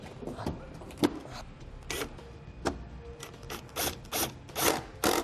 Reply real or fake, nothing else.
real